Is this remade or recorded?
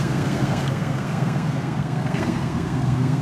remade